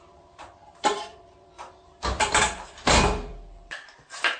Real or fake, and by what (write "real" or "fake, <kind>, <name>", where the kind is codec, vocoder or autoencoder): fake, vocoder, BigVGAN v2